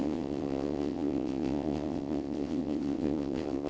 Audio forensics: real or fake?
fake